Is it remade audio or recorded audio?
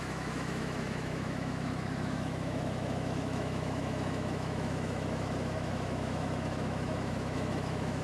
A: remade